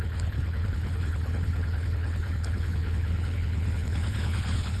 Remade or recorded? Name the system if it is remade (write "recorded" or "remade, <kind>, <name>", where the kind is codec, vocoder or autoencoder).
remade, codec, HILCodec